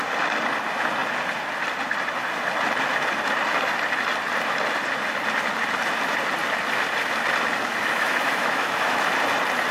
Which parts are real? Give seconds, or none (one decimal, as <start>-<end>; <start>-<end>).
0.0-7.7; 9.1-9.7